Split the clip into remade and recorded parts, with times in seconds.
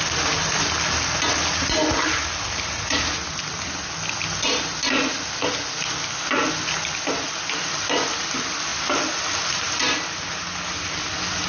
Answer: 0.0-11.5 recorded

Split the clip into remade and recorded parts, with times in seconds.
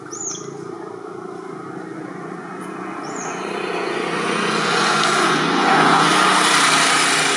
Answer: 0.0-1.9 recorded; 1.9-6.1 remade; 6.1-7.4 recorded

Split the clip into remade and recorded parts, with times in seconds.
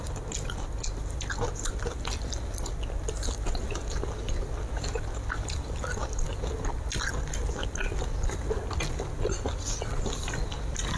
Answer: 0.0-11.0 recorded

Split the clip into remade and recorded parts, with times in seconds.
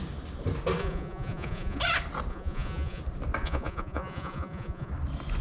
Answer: 0.0-0.8 recorded; 0.8-1.8 remade; 1.8-2.3 recorded; 2.3-3.0 remade; 3.0-3.4 recorded; 3.4-4.9 remade; 4.9-5.4 recorded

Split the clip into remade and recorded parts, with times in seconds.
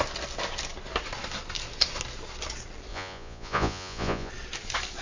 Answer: 0.0-2.9 recorded; 2.9-4.3 remade; 4.3-5.0 recorded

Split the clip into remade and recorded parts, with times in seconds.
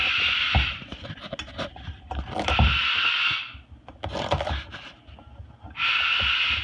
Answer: 0.0-6.6 recorded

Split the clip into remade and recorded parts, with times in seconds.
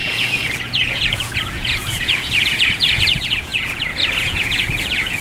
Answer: 0.0-5.2 remade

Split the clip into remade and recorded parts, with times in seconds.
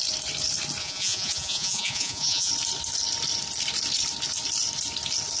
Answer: 0.0-0.8 recorded; 0.8-2.5 remade; 2.5-5.4 recorded